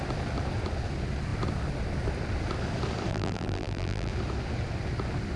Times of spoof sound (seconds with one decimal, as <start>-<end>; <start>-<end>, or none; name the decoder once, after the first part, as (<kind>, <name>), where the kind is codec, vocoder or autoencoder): 3.1-4.1 (vocoder, BigVGAN v2)